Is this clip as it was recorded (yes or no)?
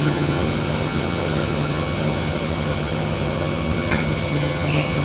no